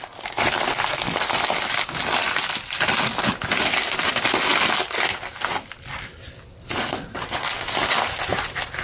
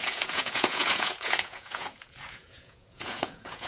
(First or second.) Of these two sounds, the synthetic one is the second